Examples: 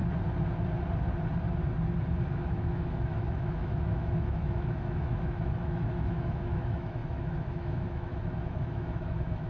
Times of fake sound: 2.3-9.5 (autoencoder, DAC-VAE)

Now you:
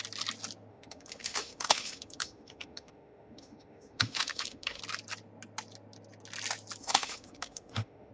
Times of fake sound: 0.7-4.8 (autoencoder, DAC-VAE); 6.8-8.1

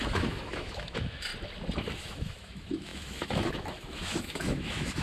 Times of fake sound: 0.0-1.3 (autoencoder, DAC-VAE); 2.0-5.0

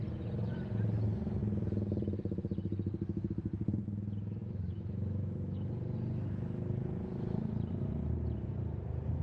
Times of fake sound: 4.4-5.7 (autoencoder, DAC-VAE)

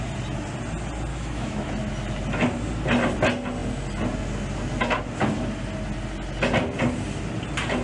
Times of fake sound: 1.1-1.7 (autoencoder, DAC-VAE)